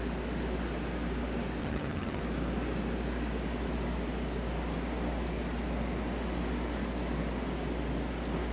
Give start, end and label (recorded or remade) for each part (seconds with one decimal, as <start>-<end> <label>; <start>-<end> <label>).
0.0-1.6 recorded; 1.6-2.2 remade; 2.2-8.5 recorded